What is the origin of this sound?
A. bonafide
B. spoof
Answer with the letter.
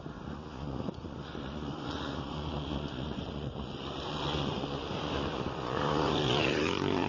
B